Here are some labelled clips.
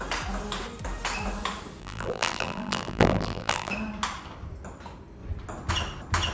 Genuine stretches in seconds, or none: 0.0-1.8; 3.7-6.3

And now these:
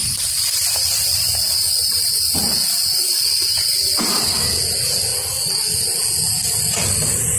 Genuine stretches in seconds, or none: 3.4-7.4

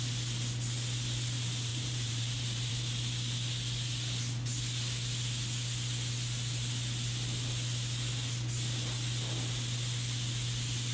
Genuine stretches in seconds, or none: 0.0-1.7; 2.7-10.9

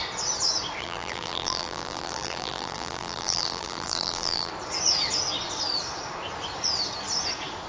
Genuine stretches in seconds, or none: 0.0-0.8; 4.5-7.7

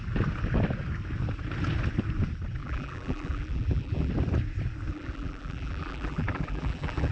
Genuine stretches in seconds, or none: 0.0-2.6; 4.1-4.9

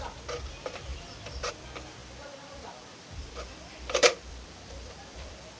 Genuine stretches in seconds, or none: 0.0-0.9; 1.5-2.0

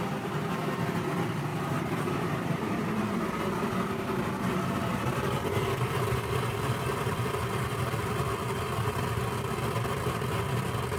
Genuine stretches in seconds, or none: none